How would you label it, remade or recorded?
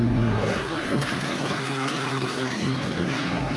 remade